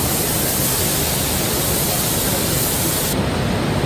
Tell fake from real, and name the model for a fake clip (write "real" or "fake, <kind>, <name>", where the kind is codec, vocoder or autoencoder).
real